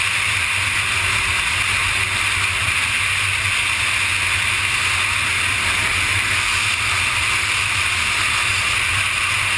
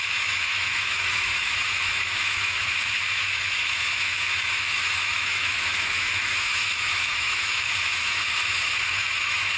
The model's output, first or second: second